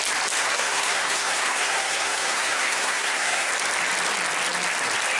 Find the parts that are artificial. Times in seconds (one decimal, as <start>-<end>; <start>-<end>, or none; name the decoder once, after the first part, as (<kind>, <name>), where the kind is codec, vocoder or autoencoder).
0.4-3.5 (codec, SNAC)

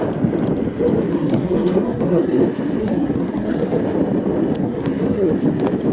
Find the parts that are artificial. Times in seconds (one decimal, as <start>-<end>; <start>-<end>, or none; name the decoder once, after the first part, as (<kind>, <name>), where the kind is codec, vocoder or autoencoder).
1.1-2.4 (codec, SNAC); 2.8-3.8; 4.6-5.3

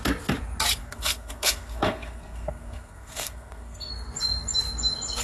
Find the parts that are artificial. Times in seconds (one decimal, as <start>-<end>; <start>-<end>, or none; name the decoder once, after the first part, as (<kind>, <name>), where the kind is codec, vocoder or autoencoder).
0.8-3.9 (codec, SNAC)

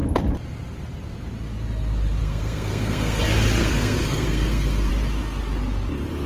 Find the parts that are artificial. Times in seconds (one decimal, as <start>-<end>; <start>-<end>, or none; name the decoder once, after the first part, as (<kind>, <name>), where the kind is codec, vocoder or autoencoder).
2.2-3.2 (codec, SNAC); 3.6-4.9

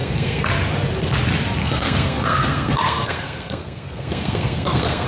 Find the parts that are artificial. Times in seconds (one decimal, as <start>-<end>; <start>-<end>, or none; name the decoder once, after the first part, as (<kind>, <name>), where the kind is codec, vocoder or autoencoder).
0.0-0.5 (codec, SNAC); 1.6-5.1